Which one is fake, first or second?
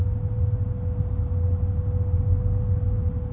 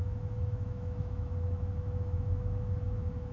second